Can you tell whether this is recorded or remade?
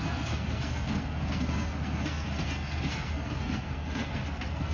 remade